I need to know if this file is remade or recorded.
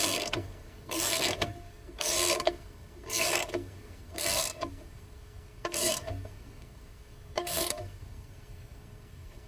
remade